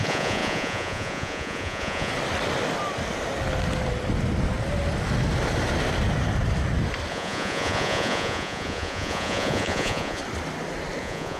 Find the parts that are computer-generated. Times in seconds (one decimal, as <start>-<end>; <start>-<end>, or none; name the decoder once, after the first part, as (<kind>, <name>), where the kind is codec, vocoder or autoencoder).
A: 0.0-2.1 (vocoder, Vocos); 7.1-10.2; 11.0-11.4